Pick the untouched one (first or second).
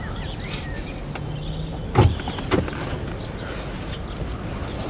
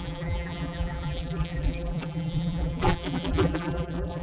first